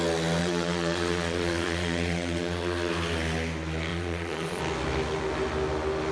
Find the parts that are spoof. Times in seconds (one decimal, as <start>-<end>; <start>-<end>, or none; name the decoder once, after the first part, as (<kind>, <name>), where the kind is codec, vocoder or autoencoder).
0.4-2.9 (vocoder, Vocos); 3.9-4.6